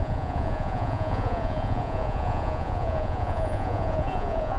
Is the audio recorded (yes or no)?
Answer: no